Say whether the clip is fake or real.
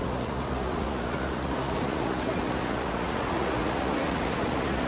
fake